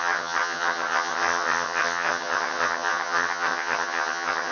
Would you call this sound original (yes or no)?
no